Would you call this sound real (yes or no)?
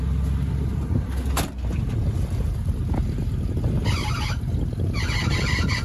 yes